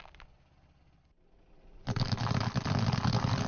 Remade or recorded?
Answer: recorded